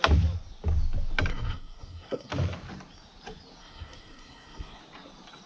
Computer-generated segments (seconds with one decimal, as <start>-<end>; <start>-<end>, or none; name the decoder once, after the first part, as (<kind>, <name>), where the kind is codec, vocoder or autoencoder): 1.3-2.3 (codec, SNAC); 3.6-4.8